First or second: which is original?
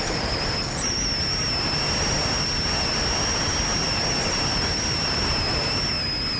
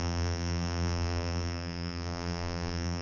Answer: first